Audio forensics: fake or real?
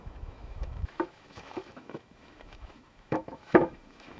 fake